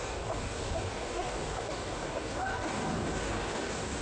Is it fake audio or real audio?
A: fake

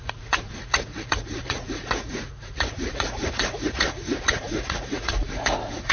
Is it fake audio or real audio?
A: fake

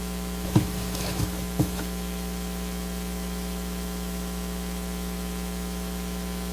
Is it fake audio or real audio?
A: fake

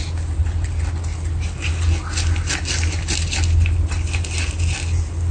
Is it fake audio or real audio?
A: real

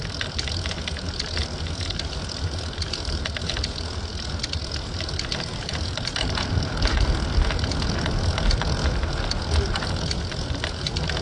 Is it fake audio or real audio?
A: real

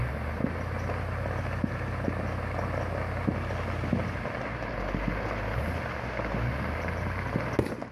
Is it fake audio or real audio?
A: real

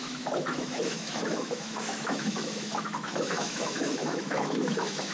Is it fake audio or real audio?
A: fake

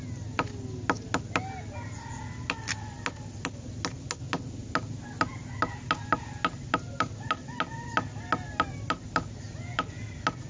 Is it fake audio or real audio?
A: real